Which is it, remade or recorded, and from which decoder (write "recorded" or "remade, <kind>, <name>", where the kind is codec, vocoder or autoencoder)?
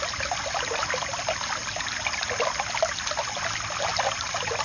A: recorded